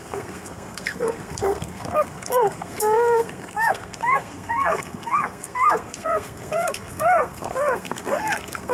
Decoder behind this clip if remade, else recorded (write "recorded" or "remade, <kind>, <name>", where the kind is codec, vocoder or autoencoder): remade, codec, SNAC